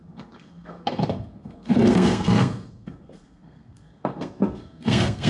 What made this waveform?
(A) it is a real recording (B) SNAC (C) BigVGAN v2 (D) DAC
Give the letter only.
B